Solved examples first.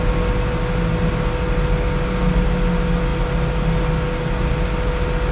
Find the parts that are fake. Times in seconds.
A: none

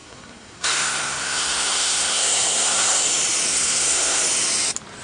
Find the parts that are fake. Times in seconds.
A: 0.0-3.0 (codec, SNAC); 3.5-4.2

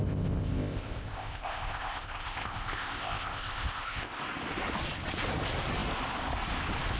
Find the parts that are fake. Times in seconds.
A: 0.0-4.2 (codec, ZipCodec)

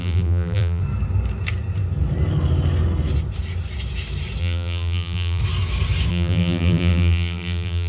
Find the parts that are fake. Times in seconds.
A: 0.0-0.8 (vocoder, BigVGAN v2); 4.4-5.4; 6.1-7.9

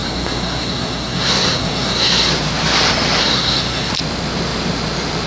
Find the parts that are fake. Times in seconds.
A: 0.0-2.3 (codec, SNAC); 3.2-3.9